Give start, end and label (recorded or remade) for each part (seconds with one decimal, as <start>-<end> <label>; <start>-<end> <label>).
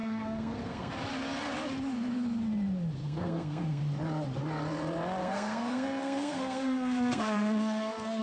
0.0-0.9 remade; 0.9-3.0 recorded; 3.0-3.8 remade; 3.8-5.2 recorded; 5.2-8.2 remade